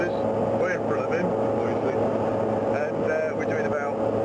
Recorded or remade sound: recorded